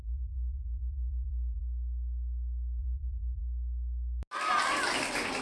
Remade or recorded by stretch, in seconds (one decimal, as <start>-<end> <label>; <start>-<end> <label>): 0.0-1.6 remade; 1.6-2.8 recorded; 2.8-3.4 remade; 3.4-5.4 recorded